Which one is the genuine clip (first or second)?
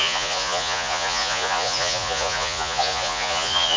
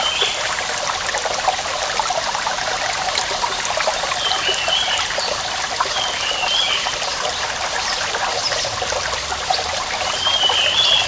second